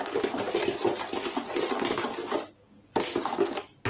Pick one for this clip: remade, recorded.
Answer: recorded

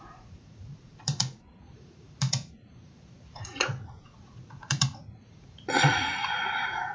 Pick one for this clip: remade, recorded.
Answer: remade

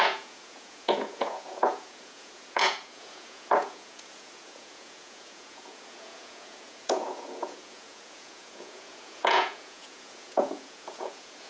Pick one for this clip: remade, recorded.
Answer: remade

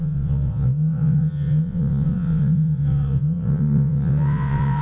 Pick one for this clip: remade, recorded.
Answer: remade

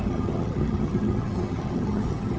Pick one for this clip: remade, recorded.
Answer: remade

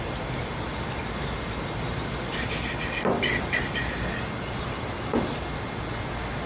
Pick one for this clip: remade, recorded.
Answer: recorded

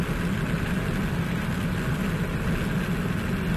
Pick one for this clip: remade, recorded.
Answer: recorded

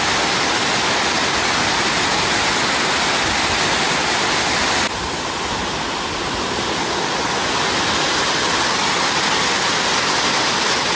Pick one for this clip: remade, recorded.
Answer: recorded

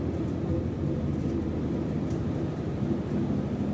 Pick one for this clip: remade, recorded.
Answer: recorded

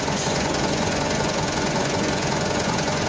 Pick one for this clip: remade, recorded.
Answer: remade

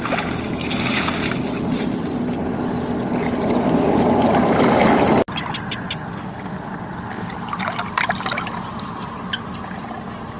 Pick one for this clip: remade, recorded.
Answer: recorded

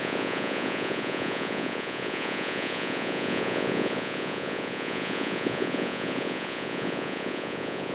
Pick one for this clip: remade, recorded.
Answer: remade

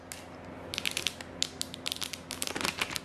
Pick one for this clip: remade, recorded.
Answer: recorded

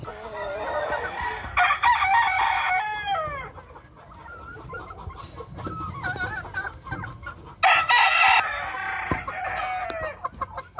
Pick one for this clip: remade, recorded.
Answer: recorded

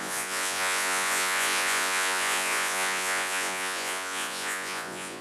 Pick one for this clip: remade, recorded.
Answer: remade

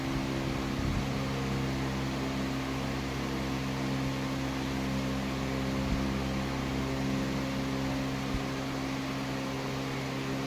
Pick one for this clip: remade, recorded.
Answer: recorded